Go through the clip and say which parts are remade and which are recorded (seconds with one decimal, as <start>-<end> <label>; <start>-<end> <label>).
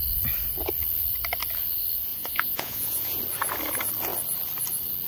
0.0-2.1 recorded; 2.1-3.2 remade; 3.2-5.1 recorded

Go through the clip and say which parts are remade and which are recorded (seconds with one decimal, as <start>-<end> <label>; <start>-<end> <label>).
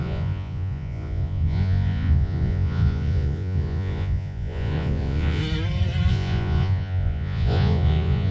0.0-5.4 remade; 5.4-6.1 recorded; 6.1-8.3 remade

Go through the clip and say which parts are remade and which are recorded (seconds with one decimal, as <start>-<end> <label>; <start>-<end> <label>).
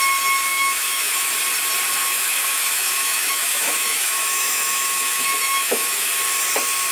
0.0-0.5 recorded; 0.5-1.3 remade; 1.3-2.0 recorded; 2.0-6.1 remade; 6.1-6.9 recorded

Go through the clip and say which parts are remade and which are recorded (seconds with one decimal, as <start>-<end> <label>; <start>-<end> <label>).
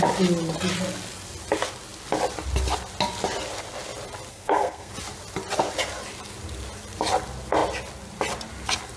0.0-4.3 recorded; 4.3-4.9 remade; 4.9-9.0 recorded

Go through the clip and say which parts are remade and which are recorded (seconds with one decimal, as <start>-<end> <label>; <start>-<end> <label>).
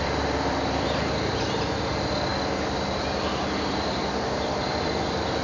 0.0-5.4 remade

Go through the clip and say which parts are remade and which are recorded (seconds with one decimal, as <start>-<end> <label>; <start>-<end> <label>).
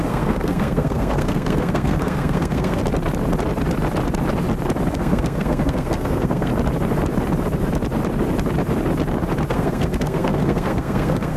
0.0-2.8 remade; 2.8-4.9 recorded; 4.9-6.5 remade; 6.5-9.5 recorded; 9.5-11.4 remade